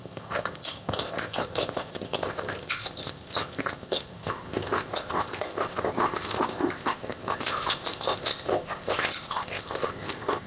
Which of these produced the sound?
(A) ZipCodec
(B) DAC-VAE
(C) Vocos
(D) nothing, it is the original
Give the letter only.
A